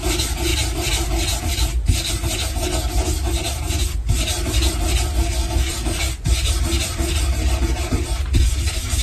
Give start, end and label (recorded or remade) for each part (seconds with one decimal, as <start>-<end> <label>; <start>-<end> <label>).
0.0-5.4 recorded; 5.4-6.1 remade; 6.1-9.0 recorded